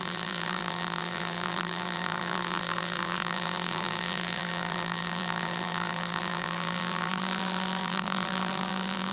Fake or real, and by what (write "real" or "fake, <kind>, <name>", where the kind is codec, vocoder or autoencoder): fake, vocoder, BigVGAN v2